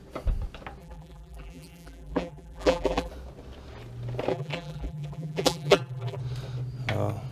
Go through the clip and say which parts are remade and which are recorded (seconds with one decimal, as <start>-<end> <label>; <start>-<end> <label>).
0.0-0.8 recorded; 0.8-3.1 remade; 3.1-4.3 recorded; 4.3-6.2 remade; 6.2-7.3 recorded